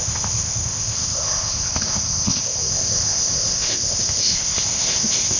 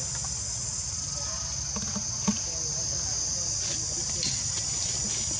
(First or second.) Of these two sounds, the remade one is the first